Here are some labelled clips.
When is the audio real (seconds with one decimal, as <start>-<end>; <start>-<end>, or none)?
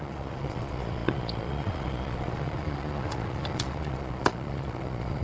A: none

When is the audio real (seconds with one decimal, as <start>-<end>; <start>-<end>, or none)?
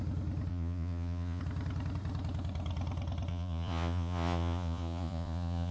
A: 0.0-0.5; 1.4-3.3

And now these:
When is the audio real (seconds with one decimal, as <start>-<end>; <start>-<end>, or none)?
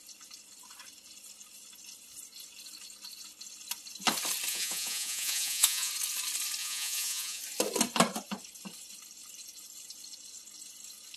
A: 0.0-4.5; 5.9-6.6; 7.4-11.2